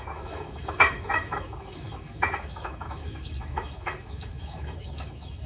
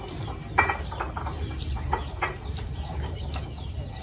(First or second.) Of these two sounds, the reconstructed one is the first